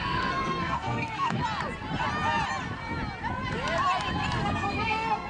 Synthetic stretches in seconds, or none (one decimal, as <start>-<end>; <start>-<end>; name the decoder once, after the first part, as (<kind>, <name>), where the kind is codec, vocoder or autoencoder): 0.0-1.4 (codec, SNAC); 4.4-5.3